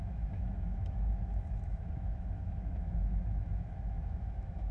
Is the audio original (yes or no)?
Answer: no